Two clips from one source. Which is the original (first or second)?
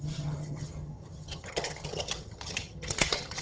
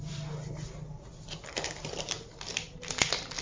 second